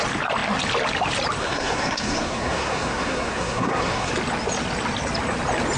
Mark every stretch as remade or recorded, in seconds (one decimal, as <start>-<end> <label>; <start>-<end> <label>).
0.0-1.4 recorded; 1.4-4.1 remade; 4.1-5.8 recorded